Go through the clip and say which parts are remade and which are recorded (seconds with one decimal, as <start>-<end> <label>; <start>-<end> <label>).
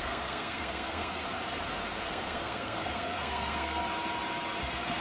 0.0-1.2 remade; 1.2-2.0 recorded; 2.0-3.8 remade; 3.8-4.6 recorded; 4.6-5.0 remade